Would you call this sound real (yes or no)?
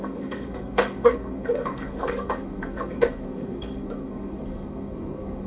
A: no